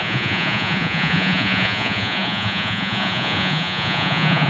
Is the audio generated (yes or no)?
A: yes